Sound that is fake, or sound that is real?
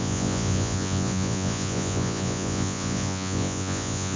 fake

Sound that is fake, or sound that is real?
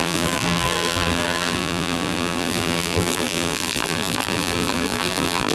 fake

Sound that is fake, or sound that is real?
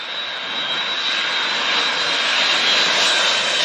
real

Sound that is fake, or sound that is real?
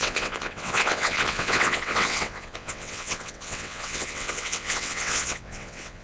fake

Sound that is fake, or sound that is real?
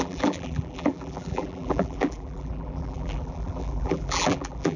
fake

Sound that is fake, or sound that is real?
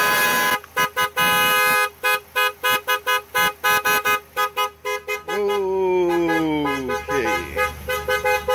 real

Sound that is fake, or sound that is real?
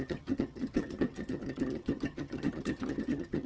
fake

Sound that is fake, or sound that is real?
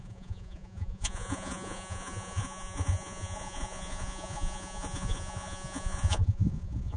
fake